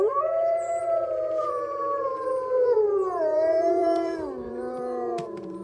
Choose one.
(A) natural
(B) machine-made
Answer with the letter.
B